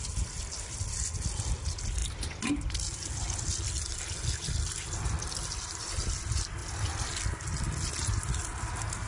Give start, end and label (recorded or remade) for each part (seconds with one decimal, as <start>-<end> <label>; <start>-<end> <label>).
0.0-9.1 recorded